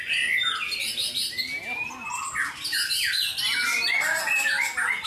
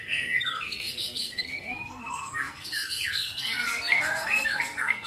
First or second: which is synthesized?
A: second